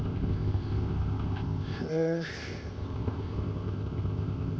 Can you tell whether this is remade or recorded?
remade